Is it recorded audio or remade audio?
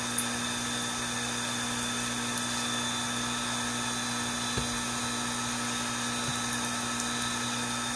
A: recorded